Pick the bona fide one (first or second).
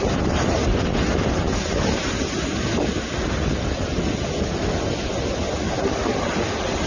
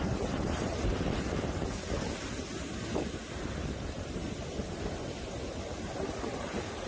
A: first